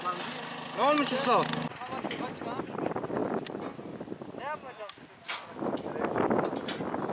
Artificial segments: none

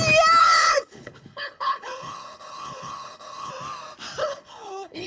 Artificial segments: 0.4-3.5 (codec, HILCodec); 4.2-5.1

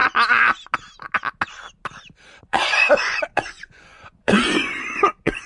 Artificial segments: 2.4-5.5 (vocoder, Vocos)

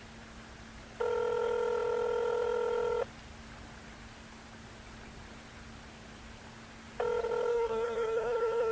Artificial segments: 7.5-8.7 (codec, SNAC)

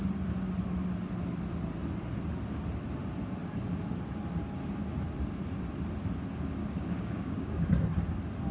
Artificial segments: 6.6-7.7 (codec, DAC)

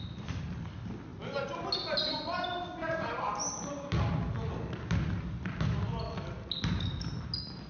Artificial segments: none